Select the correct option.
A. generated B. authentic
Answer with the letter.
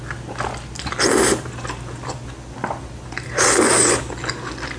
B